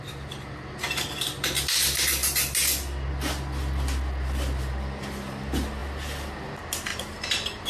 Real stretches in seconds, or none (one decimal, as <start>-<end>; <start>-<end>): 0.0-6.9